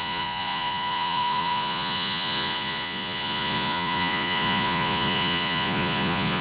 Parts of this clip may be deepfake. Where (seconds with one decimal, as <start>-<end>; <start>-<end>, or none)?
0.0-6.4